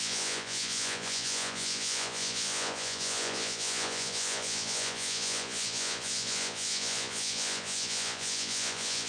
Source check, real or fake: fake